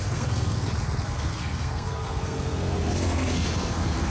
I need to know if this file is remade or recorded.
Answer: remade